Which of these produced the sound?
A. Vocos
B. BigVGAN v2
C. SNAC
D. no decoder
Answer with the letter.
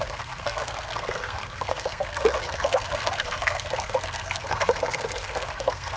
C